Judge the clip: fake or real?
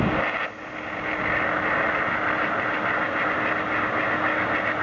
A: real